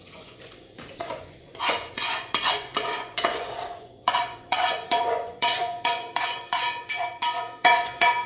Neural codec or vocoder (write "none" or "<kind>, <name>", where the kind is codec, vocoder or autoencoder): vocoder, Vocos